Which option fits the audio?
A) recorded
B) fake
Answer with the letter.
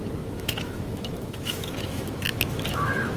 B